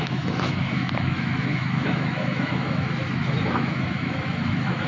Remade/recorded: remade